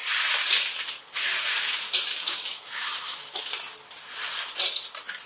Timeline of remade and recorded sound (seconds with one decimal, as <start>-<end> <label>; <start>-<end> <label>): 0.0-2.1 recorded; 2.1-3.5 remade; 3.5-5.3 recorded